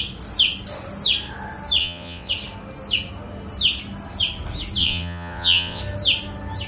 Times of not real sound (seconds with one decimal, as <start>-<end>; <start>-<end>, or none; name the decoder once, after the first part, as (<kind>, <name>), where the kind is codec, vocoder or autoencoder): 1.8-2.3 (vocoder, WaveNeXt); 4.8-5.8